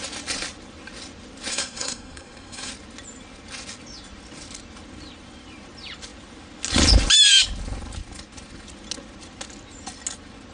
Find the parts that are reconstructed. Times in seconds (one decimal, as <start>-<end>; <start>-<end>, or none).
1.5-2.7